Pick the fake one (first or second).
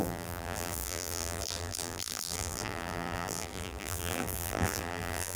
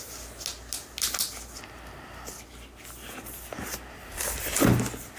first